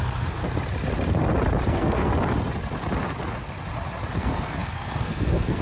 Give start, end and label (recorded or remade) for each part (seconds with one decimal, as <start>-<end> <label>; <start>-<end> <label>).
0.0-0.4 remade; 0.4-1.7 recorded; 1.7-2.1 remade; 2.1-4.1 recorded; 4.1-5.6 remade